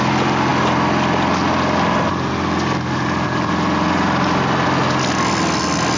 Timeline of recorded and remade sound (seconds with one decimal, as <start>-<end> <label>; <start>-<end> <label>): 0.0-6.0 recorded

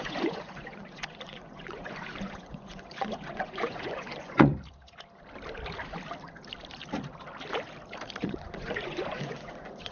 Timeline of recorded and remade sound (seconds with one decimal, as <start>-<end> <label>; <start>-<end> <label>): 0.0-4.5 remade; 4.5-8.2 recorded; 8.2-9.9 remade

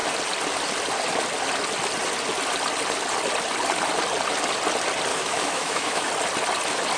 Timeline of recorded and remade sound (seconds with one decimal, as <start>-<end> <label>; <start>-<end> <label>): 0.0-5.1 recorded; 5.1-6.1 remade; 6.1-7.0 recorded